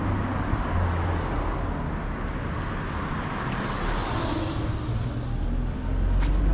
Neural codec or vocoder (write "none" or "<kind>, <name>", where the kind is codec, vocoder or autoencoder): none